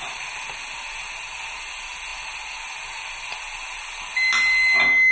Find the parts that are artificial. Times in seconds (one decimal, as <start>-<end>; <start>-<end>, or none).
none

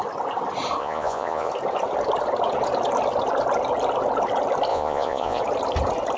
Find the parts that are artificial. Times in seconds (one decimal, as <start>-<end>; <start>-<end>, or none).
0.8-1.5; 4.7-5.4